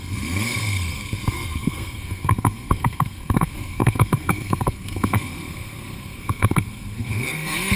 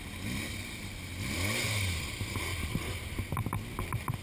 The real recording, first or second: second